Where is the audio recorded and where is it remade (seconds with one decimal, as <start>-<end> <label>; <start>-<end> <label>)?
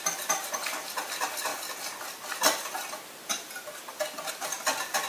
0.0-5.1 recorded